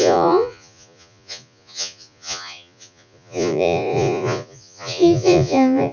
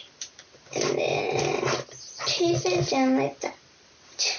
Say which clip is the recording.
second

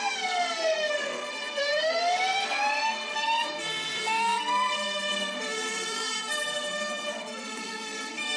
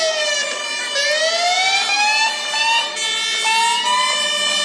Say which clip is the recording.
second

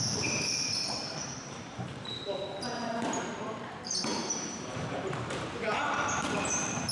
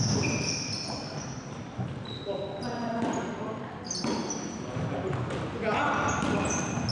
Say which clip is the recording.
second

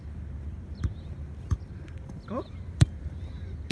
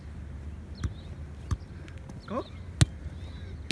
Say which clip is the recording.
second